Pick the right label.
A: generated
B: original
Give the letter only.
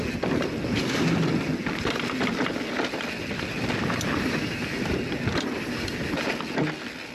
B